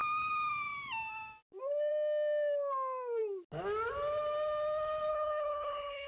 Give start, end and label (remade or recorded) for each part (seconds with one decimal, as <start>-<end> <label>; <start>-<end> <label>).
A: 0.0-5.1 recorded; 5.1-6.1 remade